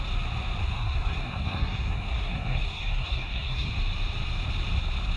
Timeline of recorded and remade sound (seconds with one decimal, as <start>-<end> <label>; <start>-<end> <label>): 0.0-0.6 recorded; 0.6-3.7 remade; 3.7-5.2 recorded